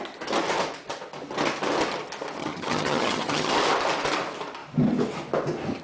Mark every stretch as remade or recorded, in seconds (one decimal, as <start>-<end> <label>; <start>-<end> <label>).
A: 0.0-2.4 recorded; 2.4-3.5 remade; 3.5-5.8 recorded